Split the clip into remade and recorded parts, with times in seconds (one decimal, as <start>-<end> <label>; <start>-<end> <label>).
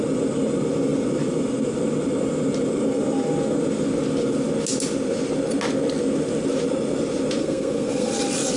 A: 0.0-7.4 recorded; 7.4-8.1 remade; 8.1-8.6 recorded